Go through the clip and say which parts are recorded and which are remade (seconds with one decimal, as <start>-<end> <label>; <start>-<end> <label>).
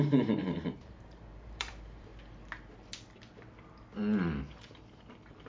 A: 0.0-2.1 remade; 2.1-5.5 recorded